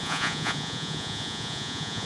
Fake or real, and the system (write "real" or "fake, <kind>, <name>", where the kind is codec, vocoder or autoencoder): fake, vocoder, Vocos